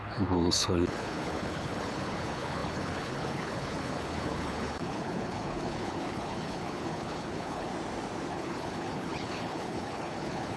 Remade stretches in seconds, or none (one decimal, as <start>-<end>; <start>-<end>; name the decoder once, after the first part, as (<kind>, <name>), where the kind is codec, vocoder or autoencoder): 0.0-7.7 (codec, HILCodec); 8.3-10.6